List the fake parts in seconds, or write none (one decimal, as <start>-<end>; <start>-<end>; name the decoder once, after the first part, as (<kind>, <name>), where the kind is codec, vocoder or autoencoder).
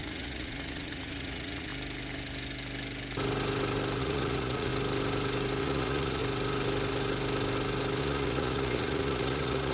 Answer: 0.0-1.7 (vocoder, Vocos); 4.0-4.7; 5.6-6.2; 8.0-9.7